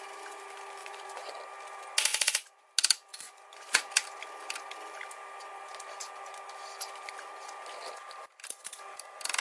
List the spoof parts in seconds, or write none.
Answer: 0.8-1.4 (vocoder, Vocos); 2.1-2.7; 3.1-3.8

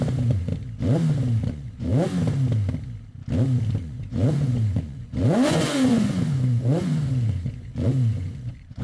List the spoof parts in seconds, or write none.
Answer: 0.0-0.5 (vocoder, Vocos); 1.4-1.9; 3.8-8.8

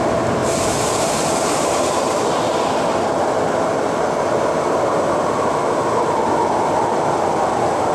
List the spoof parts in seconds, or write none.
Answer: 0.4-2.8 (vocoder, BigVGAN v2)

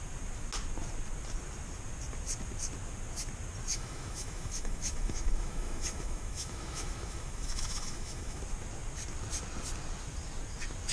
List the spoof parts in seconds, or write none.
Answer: 3.7-8.4 (autoencoder, DAC-VAE)

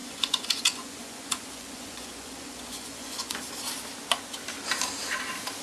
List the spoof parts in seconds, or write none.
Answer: 0.0-3.4 (vocoder, Vocos)